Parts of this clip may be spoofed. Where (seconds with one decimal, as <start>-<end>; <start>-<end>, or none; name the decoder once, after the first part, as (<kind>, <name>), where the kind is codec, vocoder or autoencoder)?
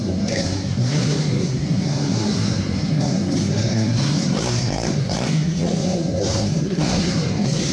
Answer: 0.0-7.7 (codec, SNAC)